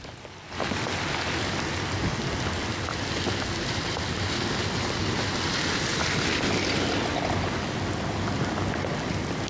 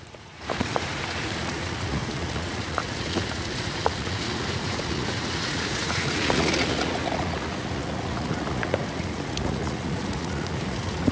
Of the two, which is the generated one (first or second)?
second